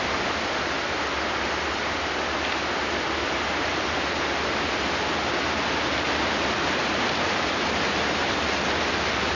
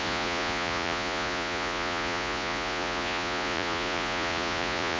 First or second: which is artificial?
second